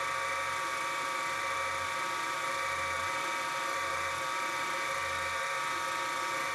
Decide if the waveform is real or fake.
real